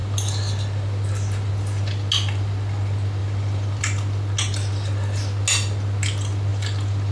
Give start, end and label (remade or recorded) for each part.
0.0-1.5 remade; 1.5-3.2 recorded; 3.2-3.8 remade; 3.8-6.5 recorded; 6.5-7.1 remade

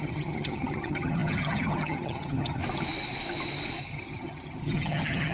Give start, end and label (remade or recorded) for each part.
0.0-2.6 remade; 2.6-3.8 recorded; 3.8-5.3 remade